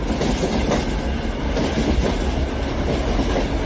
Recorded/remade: recorded